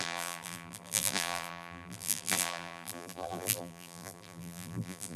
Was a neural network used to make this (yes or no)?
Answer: yes